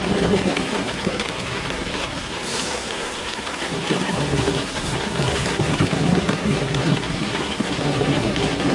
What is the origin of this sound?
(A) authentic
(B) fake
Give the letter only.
B